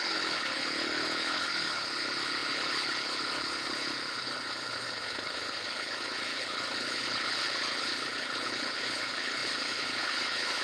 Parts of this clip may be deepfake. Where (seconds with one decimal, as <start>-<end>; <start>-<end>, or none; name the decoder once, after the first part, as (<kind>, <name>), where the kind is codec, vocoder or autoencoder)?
0.0-10.6 (codec, HILCodec)